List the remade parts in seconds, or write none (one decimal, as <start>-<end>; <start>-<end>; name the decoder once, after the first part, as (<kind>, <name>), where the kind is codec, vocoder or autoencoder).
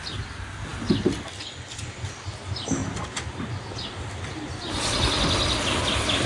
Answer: none